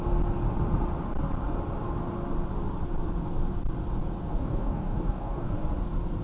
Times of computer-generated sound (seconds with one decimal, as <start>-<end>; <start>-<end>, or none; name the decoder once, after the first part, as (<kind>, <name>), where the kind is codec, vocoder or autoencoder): 4.3-5.5 (codec, DAC)